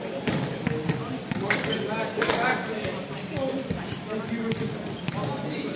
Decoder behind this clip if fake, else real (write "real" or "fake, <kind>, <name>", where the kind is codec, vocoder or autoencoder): real